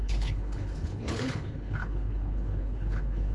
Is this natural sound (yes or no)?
no